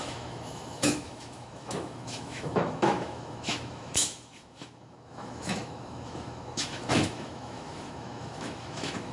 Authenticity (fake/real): fake